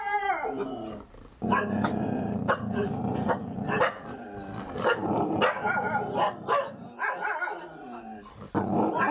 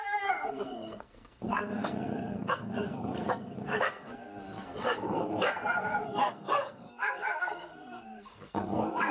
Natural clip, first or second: first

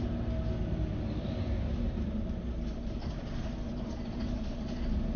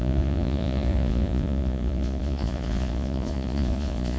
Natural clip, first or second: first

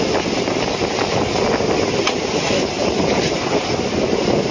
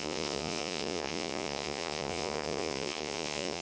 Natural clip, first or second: first